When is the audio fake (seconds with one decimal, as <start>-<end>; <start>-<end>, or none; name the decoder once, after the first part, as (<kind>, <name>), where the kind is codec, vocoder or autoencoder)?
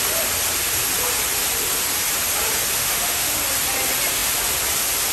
2.8-3.4 (autoencoder, DAC-VAE)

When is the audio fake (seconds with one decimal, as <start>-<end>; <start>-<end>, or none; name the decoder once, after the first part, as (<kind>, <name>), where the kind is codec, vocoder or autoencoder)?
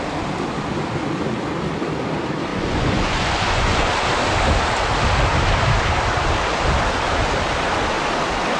2.5-3.9 (vocoder, Vocos)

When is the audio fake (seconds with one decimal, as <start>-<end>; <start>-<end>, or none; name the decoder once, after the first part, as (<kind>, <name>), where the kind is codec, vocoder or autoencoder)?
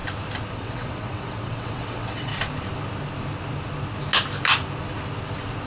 0.5-2.3 (vocoder, WaveNeXt)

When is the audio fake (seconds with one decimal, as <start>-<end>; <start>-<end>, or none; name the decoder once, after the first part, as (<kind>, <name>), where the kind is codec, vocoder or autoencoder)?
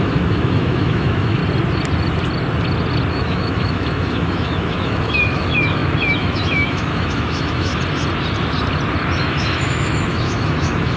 0.0-1.4 (autoencoder, DAC-VAE); 3.1-7.7; 9.2-11.0